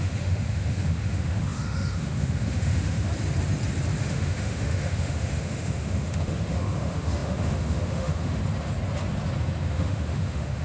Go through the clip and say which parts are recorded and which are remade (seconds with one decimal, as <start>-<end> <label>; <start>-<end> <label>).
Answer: 0.0-3.1 remade; 3.1-4.0 recorded; 4.0-8.4 remade; 8.4-9.6 recorded; 9.6-10.6 remade